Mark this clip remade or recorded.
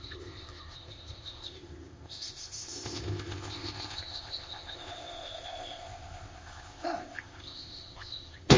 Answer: remade